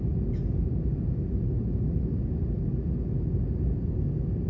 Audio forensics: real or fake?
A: real